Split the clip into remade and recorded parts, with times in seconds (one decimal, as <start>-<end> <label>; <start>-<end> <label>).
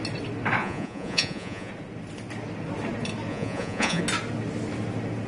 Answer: 0.0-0.6 recorded; 0.6-1.7 remade; 1.7-3.3 recorded; 3.3-4.0 remade; 4.0-5.3 recorded